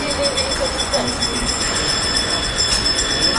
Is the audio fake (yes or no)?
yes